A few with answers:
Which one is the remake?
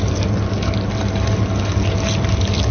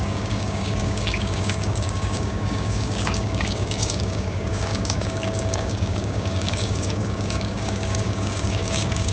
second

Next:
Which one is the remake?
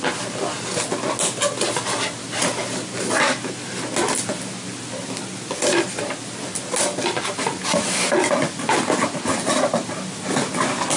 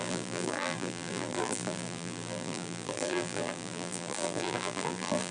second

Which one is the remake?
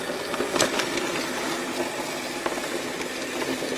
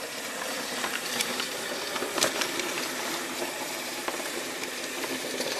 second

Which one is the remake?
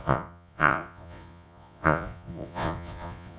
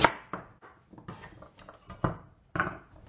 first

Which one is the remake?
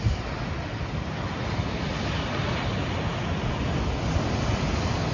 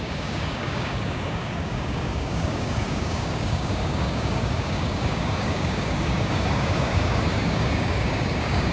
second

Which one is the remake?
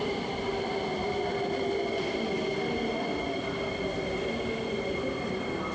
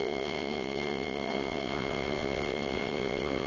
second